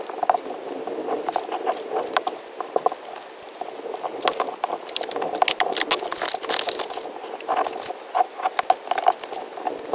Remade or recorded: recorded